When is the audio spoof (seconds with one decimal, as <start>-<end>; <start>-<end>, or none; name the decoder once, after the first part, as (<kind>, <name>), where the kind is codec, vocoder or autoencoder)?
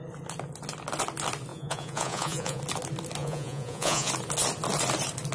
1.5-2.6 (vocoder, Vocos); 3.2-4.1